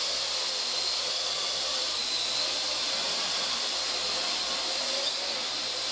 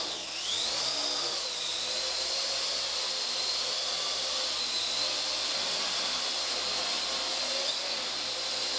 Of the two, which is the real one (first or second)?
second